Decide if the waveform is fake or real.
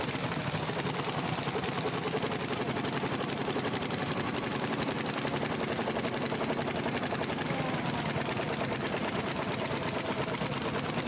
real